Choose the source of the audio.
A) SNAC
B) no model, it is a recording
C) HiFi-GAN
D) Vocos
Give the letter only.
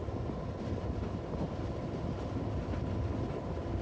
B